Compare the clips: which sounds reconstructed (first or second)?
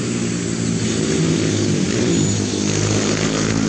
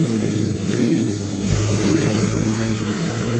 second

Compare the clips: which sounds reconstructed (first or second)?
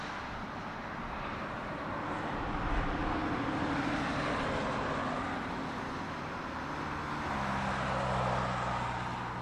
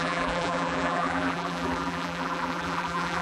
second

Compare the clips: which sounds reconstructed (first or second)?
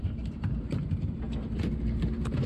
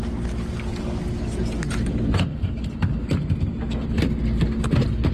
first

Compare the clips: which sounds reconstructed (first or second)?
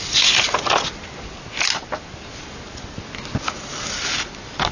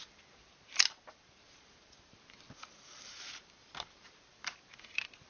second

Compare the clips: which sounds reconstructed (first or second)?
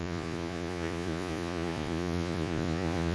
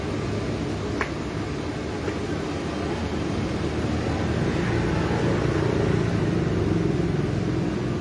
first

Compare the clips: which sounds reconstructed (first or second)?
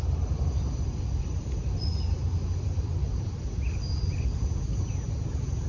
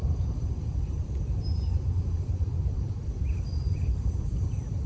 second